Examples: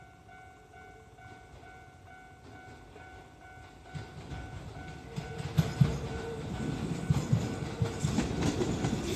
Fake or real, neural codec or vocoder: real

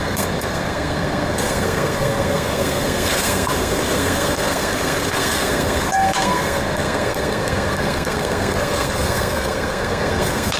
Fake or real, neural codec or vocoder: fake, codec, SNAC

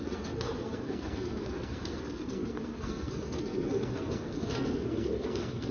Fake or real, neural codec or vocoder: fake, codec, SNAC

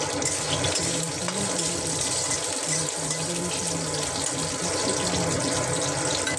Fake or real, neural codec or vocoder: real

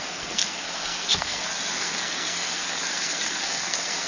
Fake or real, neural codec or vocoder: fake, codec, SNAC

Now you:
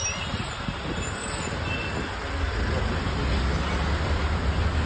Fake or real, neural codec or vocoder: real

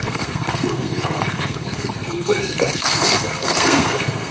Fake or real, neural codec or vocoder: fake, codec, SNAC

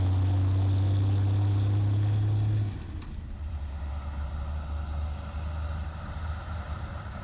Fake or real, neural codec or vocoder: real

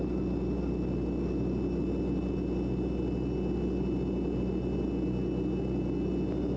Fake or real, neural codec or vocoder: real